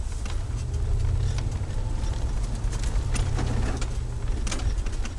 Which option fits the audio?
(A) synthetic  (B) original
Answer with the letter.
B